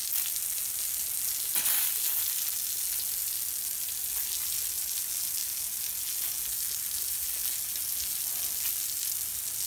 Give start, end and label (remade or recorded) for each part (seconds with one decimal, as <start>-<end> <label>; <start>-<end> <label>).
0.0-9.7 recorded